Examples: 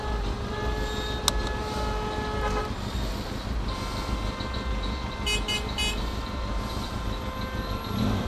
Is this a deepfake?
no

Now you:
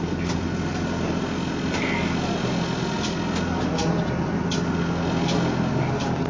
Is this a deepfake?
no